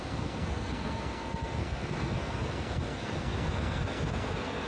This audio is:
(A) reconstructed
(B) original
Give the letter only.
A